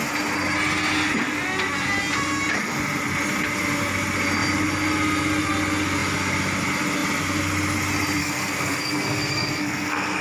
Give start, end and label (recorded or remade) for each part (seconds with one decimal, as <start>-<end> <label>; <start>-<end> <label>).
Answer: 0.0-8.2 recorded; 8.2-10.2 remade